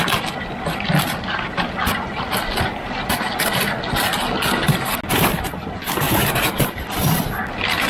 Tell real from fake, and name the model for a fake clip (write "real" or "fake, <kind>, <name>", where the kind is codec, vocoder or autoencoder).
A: real